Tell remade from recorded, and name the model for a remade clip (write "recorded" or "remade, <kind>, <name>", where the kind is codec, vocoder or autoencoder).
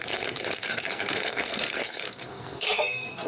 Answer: remade, codec, SNAC